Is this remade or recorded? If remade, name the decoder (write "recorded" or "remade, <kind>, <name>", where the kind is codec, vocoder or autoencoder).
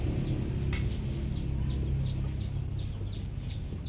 recorded